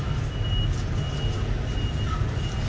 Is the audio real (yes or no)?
yes